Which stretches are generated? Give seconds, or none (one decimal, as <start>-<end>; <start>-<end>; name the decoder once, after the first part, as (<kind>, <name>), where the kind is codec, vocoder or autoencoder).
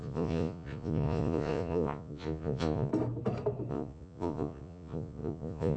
0.0-2.9 (vocoder, Vocos); 3.7-5.8